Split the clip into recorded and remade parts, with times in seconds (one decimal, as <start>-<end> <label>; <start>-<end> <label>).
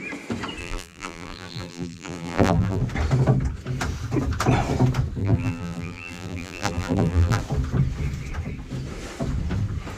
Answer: 0.0-0.6 recorded; 0.6-2.8 remade; 2.8-5.2 recorded; 5.2-7.4 remade; 7.4-10.0 recorded